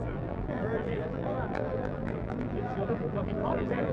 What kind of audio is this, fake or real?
fake